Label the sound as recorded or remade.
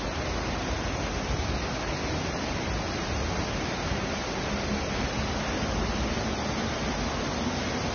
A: recorded